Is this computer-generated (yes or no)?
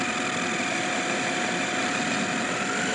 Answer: no